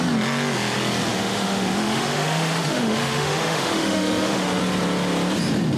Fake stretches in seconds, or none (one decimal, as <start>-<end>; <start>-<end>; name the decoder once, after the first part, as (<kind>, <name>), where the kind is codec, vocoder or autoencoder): 1.1-4.6 (autoencoder, DAC-VAE)